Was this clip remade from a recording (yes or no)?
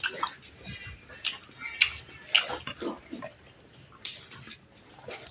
no